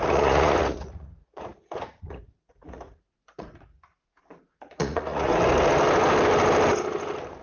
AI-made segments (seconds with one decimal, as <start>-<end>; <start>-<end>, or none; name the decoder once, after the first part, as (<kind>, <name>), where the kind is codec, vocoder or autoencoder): 0.0-5.3 (vocoder, Vocos)